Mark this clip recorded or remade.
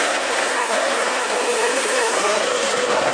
remade